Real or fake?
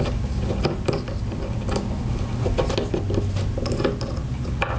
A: real